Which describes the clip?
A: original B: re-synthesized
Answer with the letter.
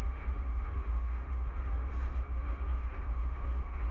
B